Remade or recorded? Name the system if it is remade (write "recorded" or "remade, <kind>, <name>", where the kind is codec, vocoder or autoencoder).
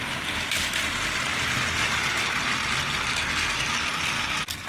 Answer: recorded